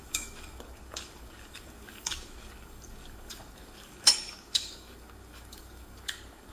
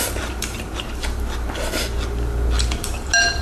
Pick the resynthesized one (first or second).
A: first